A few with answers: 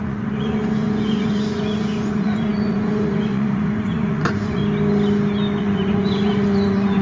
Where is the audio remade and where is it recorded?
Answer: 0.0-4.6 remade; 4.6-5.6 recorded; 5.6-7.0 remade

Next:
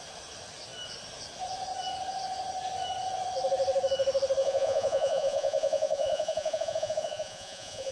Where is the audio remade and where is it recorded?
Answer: 0.0-4.4 recorded; 4.4-7.9 remade

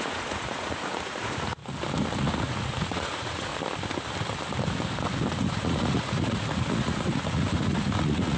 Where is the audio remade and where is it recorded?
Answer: 0.0-1.6 remade; 1.6-2.2 recorded; 2.2-3.5 remade; 3.5-5.4 recorded; 5.4-8.4 remade

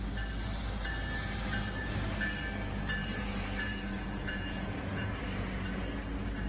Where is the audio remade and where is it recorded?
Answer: 0.0-3.0 recorded; 3.0-5.1 remade; 5.1-6.5 recorded

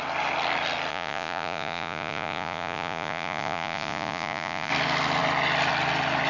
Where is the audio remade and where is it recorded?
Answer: 0.0-0.9 recorded; 0.9-4.7 remade; 4.7-6.3 recorded

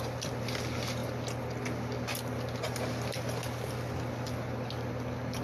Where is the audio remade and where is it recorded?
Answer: 0.0-5.4 recorded